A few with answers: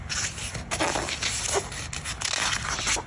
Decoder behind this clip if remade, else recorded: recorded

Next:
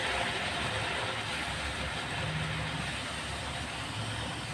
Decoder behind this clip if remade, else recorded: recorded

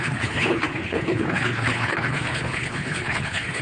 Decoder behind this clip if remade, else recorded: remade, codec, HILCodec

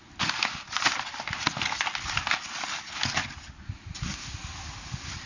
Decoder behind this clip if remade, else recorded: recorded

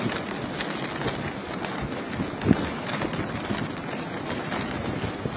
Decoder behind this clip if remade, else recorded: recorded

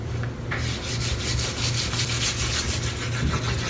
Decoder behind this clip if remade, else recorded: recorded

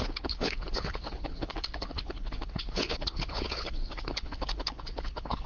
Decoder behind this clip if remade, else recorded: remade, codec, HILCodec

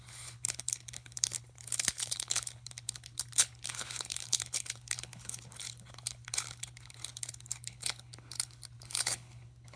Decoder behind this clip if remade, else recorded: remade, codec, HILCodec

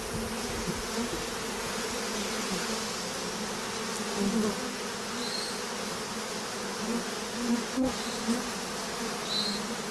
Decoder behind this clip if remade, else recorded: recorded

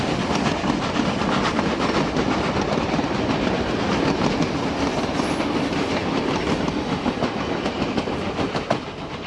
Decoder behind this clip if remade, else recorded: recorded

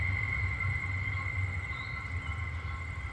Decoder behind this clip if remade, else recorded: recorded